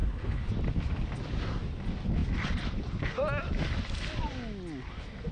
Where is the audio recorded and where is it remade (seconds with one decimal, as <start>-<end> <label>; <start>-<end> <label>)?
0.0-0.5 remade; 0.5-5.3 recorded